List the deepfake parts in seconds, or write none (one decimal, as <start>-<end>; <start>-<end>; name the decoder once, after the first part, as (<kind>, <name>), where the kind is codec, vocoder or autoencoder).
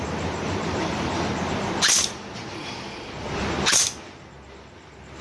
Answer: none